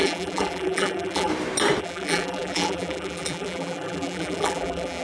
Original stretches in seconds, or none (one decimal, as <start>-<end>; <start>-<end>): 1.3-1.8